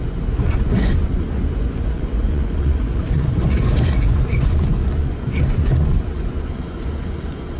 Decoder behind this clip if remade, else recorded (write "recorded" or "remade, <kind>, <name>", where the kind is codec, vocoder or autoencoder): remade, vocoder, Vocos